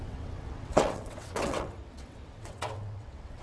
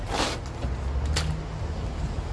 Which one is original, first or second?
second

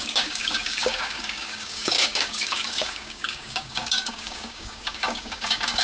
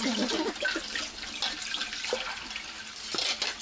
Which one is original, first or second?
second